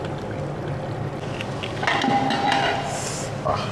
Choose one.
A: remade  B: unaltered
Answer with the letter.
B